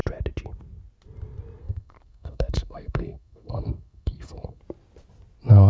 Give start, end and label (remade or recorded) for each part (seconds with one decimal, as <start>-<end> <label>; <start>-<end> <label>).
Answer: 0.0-1.6 recorded; 1.6-4.6 remade; 4.6-5.7 recorded